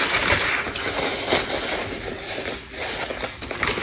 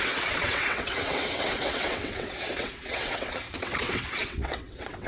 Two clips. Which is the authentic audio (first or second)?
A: first